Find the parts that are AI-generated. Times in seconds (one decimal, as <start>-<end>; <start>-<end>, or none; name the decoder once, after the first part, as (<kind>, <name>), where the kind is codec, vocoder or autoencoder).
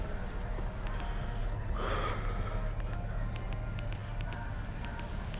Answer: 1.4-1.9 (codec, HILCodec)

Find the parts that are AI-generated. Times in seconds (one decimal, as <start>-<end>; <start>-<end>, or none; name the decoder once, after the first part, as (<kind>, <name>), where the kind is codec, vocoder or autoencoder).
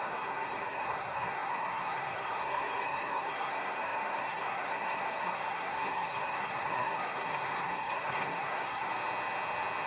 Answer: 0.0-8.9 (codec, SNAC)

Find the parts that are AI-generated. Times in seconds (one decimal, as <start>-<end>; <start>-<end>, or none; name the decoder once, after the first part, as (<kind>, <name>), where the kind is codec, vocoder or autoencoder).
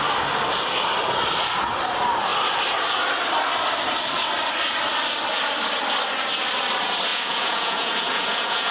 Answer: 7.1-8.7 (vocoder, Vocos)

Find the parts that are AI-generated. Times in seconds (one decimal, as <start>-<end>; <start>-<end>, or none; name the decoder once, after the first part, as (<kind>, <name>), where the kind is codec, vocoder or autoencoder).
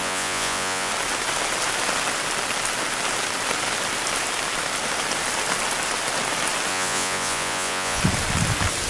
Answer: 0.0-0.9 (vocoder, Vocos); 6.7-8.0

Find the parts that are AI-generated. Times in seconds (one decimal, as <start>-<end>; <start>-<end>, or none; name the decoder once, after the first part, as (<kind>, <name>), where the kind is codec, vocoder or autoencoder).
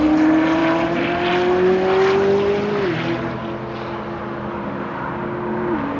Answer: none